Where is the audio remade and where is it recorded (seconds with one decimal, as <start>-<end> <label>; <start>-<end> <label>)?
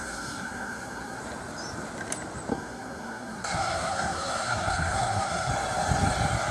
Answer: 0.0-1.2 remade; 1.2-2.5 recorded; 2.5-5.5 remade; 5.5-6.5 recorded